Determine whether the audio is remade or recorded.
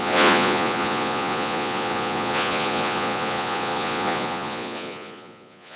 remade